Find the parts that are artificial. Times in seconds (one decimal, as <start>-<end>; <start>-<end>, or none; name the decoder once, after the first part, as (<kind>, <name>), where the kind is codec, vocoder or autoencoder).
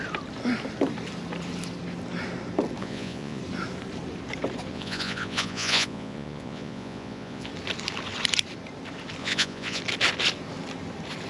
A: 2.8-3.4 (vocoder, Vocos); 4.7-7.5; 9.2-9.8